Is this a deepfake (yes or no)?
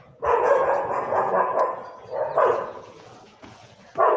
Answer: yes